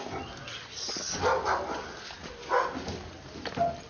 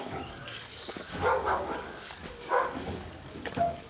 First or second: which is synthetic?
second